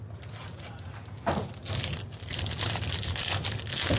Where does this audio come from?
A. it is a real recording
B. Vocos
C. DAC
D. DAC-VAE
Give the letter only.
A